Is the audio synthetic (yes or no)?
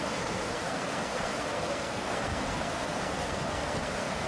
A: yes